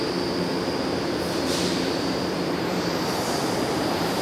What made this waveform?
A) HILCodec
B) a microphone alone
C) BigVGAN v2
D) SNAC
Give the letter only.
C